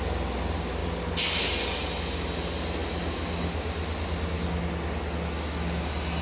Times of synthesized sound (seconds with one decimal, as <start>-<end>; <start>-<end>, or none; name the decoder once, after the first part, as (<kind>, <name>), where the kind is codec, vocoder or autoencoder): none